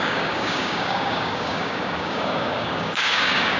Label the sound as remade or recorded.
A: remade